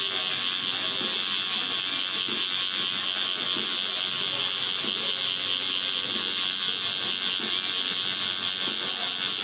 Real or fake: real